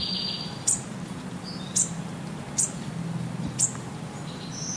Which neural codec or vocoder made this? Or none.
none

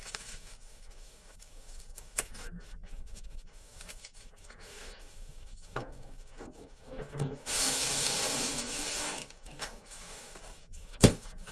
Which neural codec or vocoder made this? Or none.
codec, DAC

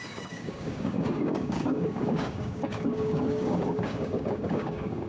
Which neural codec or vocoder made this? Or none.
codec, DAC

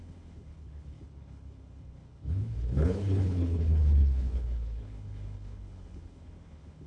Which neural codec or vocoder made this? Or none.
codec, HILCodec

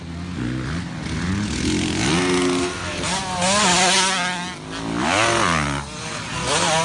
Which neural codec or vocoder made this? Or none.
none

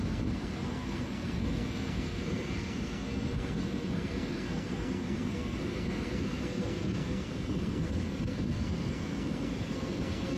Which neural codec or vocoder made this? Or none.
codec, SNAC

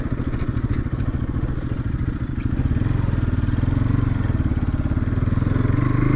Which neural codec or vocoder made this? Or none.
none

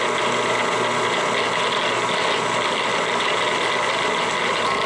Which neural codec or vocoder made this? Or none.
none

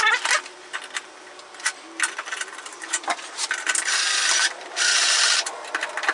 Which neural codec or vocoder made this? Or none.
vocoder, BigVGAN v2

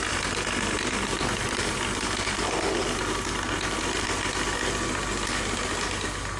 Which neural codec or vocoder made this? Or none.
none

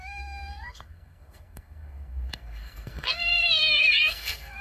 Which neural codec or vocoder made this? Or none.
codec, SNAC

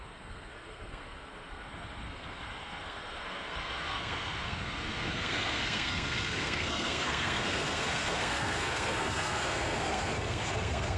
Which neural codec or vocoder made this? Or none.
codec, SNAC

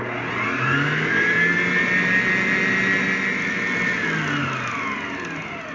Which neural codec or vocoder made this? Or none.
none